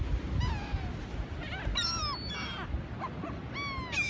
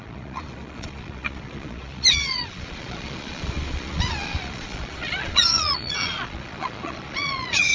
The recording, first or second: first